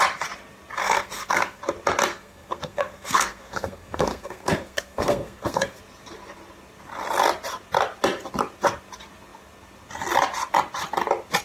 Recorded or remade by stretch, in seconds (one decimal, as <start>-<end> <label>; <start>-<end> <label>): 0.0-0.8 recorded; 0.8-1.6 remade; 1.6-2.1 recorded; 2.1-5.8 remade; 5.8-11.4 recorded